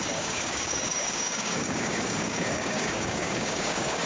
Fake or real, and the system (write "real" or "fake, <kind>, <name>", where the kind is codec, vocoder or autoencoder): fake, codec, DAC